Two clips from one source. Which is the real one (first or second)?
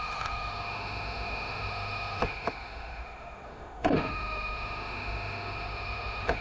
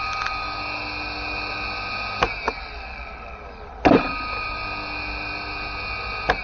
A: second